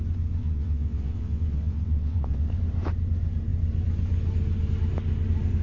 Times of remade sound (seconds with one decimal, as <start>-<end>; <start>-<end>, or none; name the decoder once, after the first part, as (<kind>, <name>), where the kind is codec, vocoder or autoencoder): 0.4-2.5 (vocoder, WaveNeXt)